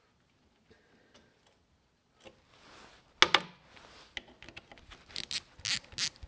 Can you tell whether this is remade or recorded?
recorded